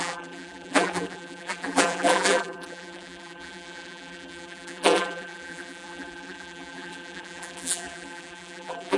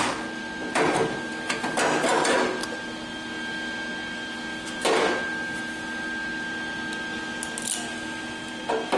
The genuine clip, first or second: second